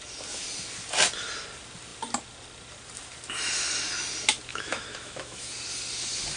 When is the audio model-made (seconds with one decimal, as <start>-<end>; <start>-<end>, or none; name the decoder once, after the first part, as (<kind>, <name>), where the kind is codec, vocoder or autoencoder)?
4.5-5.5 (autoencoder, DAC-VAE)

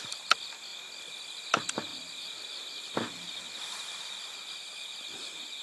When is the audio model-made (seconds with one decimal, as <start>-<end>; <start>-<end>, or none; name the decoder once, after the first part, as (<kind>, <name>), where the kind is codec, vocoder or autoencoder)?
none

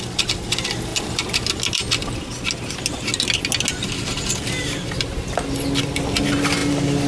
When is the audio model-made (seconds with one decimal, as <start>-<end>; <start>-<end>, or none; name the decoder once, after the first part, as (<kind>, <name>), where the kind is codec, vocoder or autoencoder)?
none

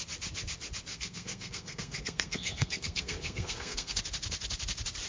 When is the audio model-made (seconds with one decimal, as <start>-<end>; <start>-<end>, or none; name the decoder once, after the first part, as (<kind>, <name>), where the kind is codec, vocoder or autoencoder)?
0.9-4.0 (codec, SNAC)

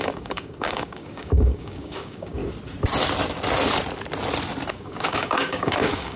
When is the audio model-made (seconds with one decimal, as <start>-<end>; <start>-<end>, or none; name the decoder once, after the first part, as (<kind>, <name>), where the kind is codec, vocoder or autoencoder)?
0.0-2.4 (codec, DAC); 4.7-6.2

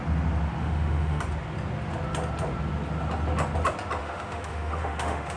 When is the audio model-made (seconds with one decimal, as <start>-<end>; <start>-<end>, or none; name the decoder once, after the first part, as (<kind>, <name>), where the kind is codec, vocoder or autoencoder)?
0.6-1.2 (autoencoder, DAC-VAE); 4.0-5.4

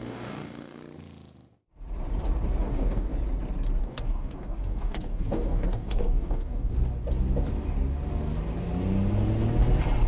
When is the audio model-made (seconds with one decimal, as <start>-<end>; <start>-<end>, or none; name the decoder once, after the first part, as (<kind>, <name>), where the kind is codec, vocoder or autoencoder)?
0.0-0.8 (codec, DAC); 2.6-3.1; 3.8-6.7

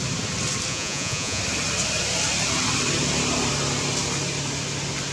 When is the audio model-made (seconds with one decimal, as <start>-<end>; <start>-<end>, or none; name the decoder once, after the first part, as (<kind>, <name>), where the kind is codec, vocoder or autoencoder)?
0.7-1.4 (vocoder, Vocos)